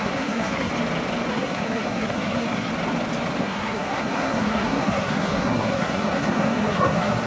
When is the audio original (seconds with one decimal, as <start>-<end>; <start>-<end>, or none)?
0.7-1.3; 2.7-3.4